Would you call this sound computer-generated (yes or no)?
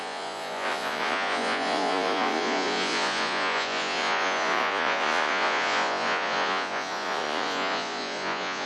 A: yes